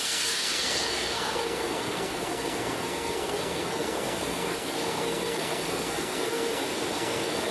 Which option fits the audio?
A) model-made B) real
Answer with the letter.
A